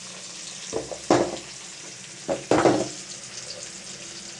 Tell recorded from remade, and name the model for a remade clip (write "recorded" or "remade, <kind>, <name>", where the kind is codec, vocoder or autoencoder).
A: recorded